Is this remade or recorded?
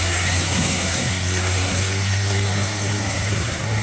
remade